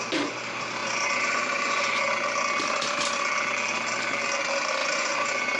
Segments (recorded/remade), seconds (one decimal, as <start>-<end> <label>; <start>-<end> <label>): 0.0-0.8 recorded; 0.8-2.0 remade; 2.0-4.8 recorded; 4.8-5.6 remade